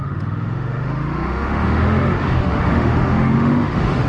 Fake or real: fake